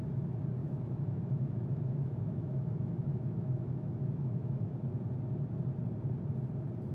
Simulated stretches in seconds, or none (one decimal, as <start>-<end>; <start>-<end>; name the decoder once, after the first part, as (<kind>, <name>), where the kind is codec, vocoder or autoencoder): 0.6-4.7 (autoencoder, DAC-VAE)